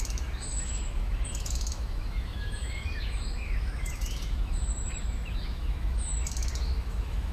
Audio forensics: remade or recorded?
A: remade